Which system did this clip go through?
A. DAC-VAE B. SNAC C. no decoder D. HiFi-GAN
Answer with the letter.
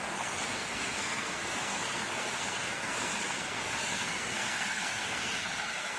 B